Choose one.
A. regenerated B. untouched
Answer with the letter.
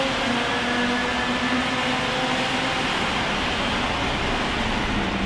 B